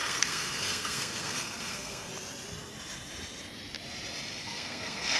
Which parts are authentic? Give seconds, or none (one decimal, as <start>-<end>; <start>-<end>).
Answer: 2.1-4.4